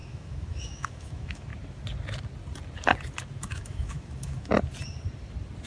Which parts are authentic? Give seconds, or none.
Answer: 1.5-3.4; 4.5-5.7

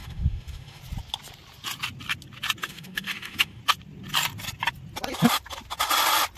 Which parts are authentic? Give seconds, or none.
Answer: 0.8-2.6; 3.6-6.4

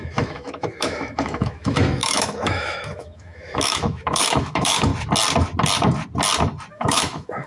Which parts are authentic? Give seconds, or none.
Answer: 4.9-6.7